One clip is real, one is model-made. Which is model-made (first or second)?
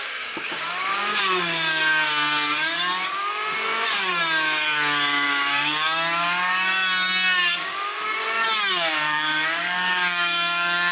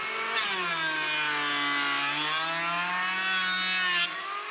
first